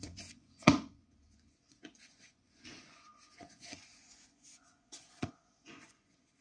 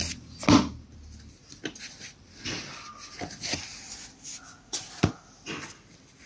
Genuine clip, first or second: second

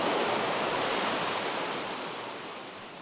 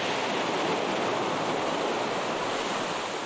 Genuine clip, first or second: second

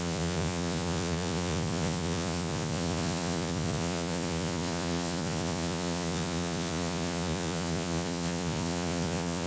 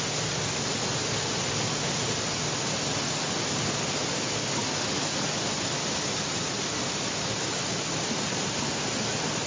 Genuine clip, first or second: second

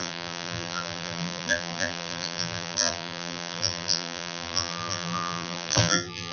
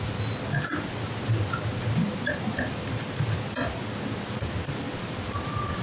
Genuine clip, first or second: second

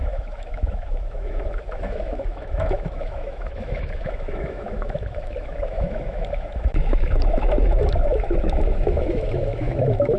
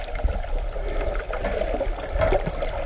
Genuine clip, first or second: second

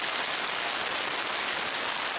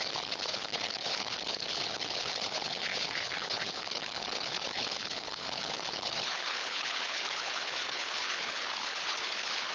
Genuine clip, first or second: first